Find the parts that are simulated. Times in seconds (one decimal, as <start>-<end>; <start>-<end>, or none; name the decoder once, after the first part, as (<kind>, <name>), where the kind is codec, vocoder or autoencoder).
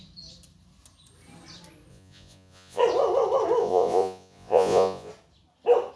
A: 1.9-2.8 (vocoder, Vocos); 3.6-5.1